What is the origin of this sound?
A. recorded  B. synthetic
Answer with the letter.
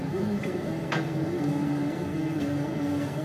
B